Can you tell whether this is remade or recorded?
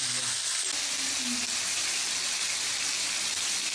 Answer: recorded